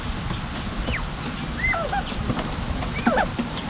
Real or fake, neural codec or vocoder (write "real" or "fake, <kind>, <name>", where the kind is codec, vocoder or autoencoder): real